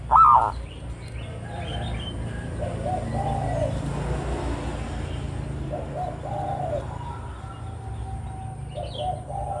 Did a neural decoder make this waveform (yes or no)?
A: no